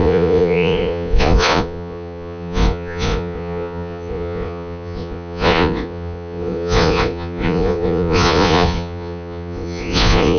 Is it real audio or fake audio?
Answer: fake